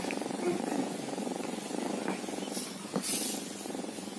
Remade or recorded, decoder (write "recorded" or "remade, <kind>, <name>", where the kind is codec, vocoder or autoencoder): remade, vocoder, Vocos